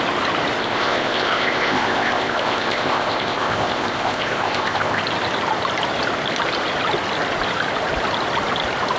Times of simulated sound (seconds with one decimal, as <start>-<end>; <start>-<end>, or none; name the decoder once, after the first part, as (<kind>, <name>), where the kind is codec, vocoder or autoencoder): 0.6-5.0 (codec, ZipCodec)